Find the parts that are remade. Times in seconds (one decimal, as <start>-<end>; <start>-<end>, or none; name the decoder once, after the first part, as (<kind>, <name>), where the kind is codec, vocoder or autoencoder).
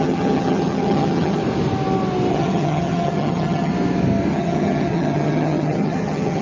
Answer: 0.0-1.4 (vocoder, HiFi-GAN); 2.3-3.7; 4.3-6.4